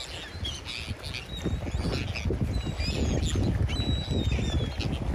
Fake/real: real